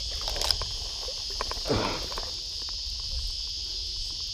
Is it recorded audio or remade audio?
recorded